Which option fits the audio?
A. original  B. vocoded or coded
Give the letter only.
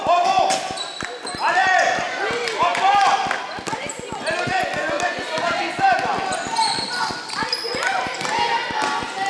A